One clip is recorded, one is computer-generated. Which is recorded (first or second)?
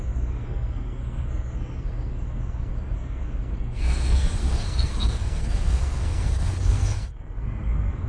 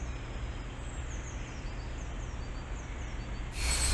second